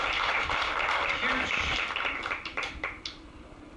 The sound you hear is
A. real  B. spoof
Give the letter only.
A